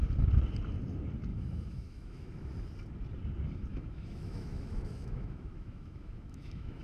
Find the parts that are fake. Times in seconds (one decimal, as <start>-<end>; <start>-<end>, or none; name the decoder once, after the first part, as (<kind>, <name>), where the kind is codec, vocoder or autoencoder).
1.3-2.5 (autoencoder, DAC-VAE); 3.7-6.8